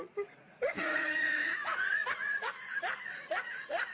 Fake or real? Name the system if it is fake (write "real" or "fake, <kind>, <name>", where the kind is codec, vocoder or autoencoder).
fake, vocoder, Vocos